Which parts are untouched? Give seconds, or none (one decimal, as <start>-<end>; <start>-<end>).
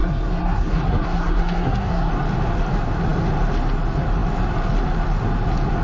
2.1-5.8